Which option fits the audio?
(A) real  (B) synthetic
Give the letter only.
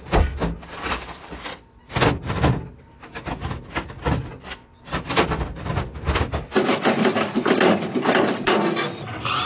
A